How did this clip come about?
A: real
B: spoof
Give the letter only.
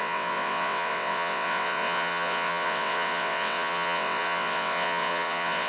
B